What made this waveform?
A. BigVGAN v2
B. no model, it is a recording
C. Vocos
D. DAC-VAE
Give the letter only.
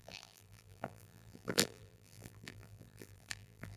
A